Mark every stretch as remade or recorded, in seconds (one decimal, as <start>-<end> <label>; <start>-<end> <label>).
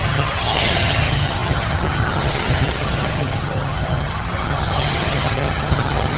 0.0-6.2 remade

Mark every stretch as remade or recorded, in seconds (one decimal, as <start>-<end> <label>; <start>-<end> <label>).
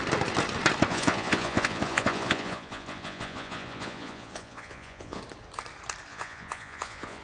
0.0-0.9 recorded; 0.9-5.2 remade; 5.2-6.1 recorded; 6.1-7.2 remade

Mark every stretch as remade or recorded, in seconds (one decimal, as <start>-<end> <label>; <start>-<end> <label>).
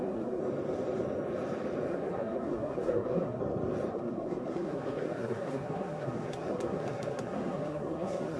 0.0-0.4 remade; 0.4-1.9 recorded; 1.9-3.4 remade; 3.4-3.9 recorded; 3.9-8.4 remade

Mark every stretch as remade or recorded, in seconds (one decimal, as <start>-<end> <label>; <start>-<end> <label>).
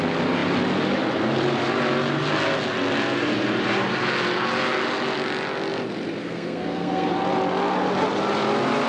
0.0-6.2 recorded; 6.2-7.1 remade; 7.1-8.9 recorded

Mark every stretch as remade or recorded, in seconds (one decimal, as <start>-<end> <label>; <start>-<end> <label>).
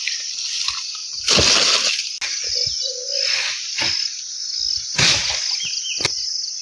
0.0-6.6 recorded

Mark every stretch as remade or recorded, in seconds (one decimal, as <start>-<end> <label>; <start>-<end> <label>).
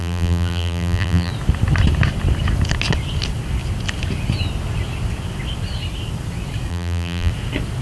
0.0-1.3 remade; 1.3-6.7 recorded; 6.7-7.3 remade; 7.3-7.8 recorded